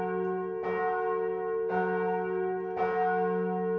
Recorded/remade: recorded